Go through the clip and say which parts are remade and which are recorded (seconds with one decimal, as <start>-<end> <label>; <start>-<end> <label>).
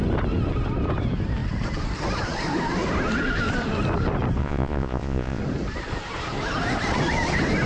0.0-4.4 recorded; 4.4-5.4 remade; 5.4-7.7 recorded